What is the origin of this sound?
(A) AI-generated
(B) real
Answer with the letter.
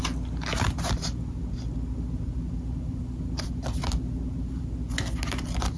B